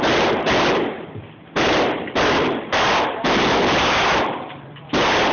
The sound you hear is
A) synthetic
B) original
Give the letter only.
A